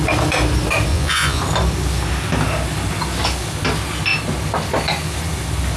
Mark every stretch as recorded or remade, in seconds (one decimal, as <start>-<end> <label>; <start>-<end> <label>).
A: 0.0-0.9 recorded; 0.9-1.4 remade; 1.4-5.8 recorded